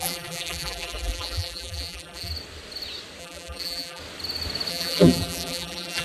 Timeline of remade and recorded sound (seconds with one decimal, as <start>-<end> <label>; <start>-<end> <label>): 0.0-2.3 remade; 2.3-3.2 recorded; 3.2-4.0 remade; 4.0-4.7 recorded; 4.7-6.0 remade